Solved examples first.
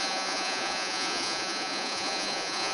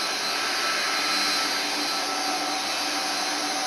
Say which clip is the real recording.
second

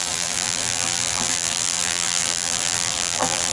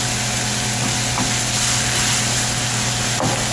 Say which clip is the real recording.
second